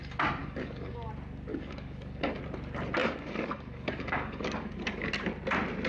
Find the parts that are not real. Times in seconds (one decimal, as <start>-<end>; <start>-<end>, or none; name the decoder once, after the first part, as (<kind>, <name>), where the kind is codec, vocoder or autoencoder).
0.4-1.1 (codec, DAC); 1.5-2.4; 3.0-5.1